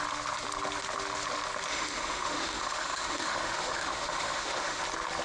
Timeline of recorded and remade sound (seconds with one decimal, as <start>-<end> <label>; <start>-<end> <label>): 0.0-1.7 recorded; 1.7-4.8 remade; 4.8-5.2 recorded